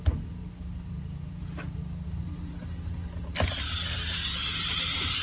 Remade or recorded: recorded